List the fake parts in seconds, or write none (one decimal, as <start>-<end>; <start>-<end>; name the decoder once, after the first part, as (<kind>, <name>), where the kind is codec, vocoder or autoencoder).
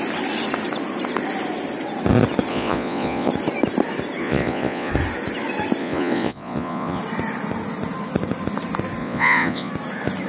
2.5-3.3 (vocoder, Vocos); 4.2-4.9; 5.8-7.0; 9.0-9.7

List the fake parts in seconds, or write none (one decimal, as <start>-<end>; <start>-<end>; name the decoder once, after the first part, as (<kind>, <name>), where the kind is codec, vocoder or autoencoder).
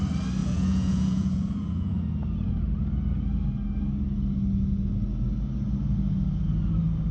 0.4-2.0 (vocoder, Vocos)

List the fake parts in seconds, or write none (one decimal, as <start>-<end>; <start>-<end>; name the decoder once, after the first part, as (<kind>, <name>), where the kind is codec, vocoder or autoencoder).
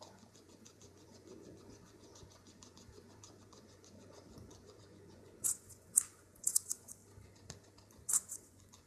0.0-7.0 (vocoder, Vocos); 7.9-8.9